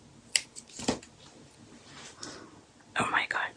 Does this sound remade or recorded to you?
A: recorded